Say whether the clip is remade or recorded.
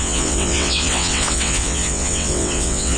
remade